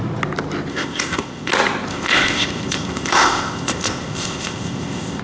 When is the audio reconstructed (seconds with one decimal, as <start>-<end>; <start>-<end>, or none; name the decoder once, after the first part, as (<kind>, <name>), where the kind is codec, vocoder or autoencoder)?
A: 0.7-1.5 (codec, ZipCodec); 1.9-5.2

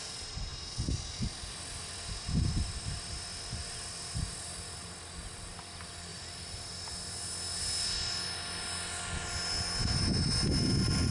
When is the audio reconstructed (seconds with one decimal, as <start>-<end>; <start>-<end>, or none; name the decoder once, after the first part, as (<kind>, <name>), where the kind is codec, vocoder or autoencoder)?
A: none

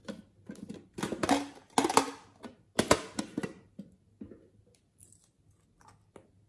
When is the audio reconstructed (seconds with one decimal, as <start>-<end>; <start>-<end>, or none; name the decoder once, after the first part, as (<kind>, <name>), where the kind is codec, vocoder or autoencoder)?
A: none

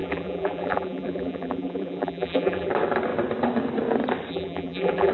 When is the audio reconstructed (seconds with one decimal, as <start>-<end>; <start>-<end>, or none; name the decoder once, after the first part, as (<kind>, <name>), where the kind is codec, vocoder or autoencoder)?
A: 0.0-2.7 (vocoder, BigVGAN v2); 4.3-5.1

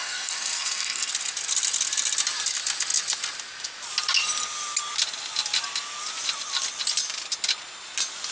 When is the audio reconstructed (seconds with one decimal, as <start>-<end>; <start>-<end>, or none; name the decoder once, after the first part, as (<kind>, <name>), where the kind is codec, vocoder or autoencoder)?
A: 0.0-1.1 (codec, SNAC)

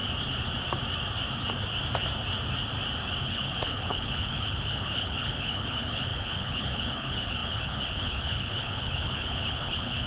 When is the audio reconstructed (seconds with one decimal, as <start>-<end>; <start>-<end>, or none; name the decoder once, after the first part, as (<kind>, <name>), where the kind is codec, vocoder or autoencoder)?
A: 3.2-10.1 (codec, HILCodec)